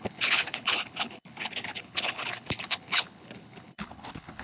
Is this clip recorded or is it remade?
remade